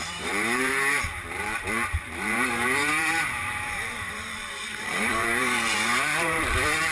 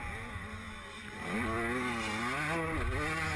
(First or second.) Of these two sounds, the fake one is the first